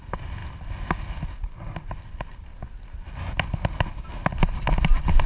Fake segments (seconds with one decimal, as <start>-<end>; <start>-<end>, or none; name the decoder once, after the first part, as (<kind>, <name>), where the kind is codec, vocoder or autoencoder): none